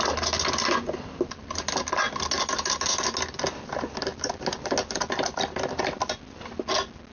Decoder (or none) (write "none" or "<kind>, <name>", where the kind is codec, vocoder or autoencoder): none